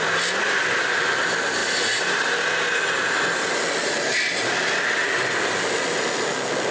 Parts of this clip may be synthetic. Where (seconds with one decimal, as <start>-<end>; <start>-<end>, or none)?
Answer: none